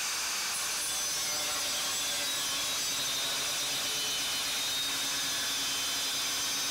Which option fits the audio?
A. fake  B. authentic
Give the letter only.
B